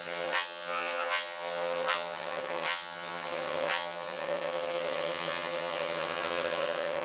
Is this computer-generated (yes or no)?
yes